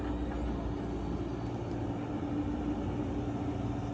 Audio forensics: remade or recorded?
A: recorded